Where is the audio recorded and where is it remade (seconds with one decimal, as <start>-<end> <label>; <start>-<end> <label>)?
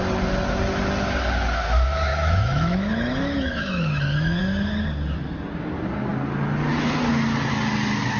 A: 0.0-2.1 recorded; 2.1-4.4 remade; 4.4-8.2 recorded